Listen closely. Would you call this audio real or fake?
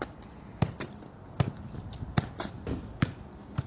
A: real